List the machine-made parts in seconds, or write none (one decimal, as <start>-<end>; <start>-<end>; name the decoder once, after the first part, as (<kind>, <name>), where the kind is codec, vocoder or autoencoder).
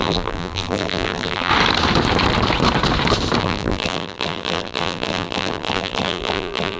0.0-1.5 (vocoder, BigVGAN v2); 3.4-6.8